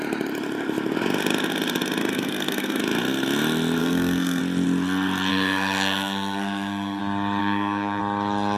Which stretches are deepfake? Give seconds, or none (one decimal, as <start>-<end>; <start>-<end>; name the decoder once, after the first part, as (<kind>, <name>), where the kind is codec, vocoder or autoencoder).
2.0-2.8 (codec, SNAC); 3.8-4.4; 5.3-7.0; 7.4-8.0